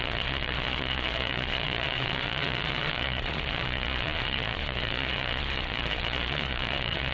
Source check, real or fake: fake